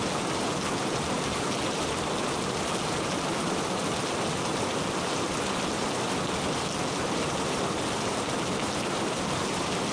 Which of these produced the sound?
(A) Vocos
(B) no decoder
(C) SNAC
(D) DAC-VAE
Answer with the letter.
B